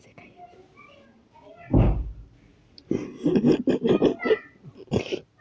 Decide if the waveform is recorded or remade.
recorded